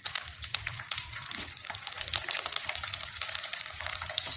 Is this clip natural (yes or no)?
no